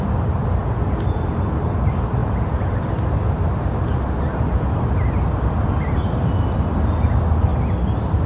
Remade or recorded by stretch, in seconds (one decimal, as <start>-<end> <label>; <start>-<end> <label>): 0.0-0.6 recorded; 0.6-1.2 remade; 1.2-2.2 recorded; 2.2-2.8 remade; 2.8-8.3 recorded